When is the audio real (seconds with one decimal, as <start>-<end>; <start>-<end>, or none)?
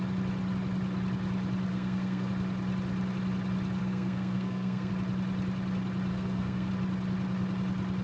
0.0-1.7; 2.3-3.8; 4.9-6.1; 6.7-8.0